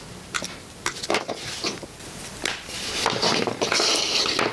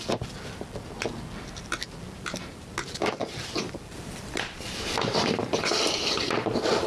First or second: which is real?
first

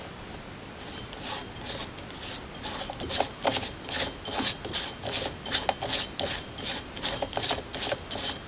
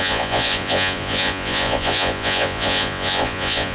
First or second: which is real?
first